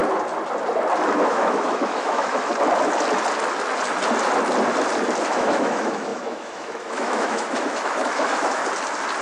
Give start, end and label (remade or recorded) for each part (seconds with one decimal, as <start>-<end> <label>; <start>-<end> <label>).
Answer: 0.0-1.1 recorded; 1.1-2.5 remade; 2.5-5.2 recorded; 5.2-8.6 remade; 8.6-9.2 recorded